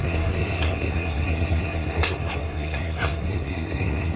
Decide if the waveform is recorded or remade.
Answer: remade